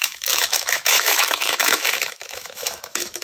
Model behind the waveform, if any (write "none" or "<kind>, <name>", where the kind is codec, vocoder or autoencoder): autoencoder, DAC-VAE